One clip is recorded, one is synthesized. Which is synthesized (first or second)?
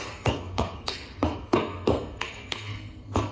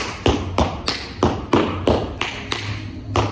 first